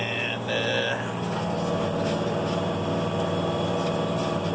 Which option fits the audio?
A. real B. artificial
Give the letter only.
A